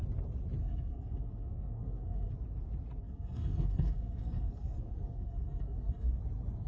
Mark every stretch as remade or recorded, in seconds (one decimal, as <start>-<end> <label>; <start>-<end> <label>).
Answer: 0.0-0.6 recorded; 0.6-2.3 remade; 2.3-3.0 recorded; 3.0-6.2 remade; 6.2-6.7 recorded